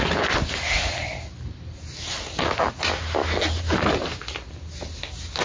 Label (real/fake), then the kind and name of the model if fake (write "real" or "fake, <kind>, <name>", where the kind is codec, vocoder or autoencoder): real